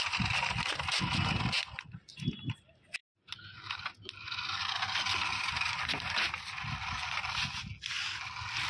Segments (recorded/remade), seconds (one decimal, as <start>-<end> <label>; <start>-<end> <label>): 0.0-8.7 recorded